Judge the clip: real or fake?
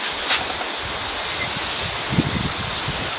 fake